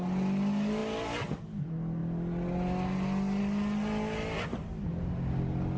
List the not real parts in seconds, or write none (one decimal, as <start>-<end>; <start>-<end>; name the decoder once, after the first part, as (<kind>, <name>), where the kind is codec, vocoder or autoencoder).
none